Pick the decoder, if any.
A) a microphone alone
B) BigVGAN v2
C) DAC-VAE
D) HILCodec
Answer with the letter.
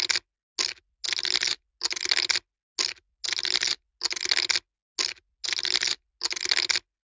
A